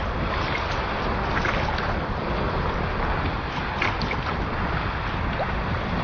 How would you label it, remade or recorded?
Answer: recorded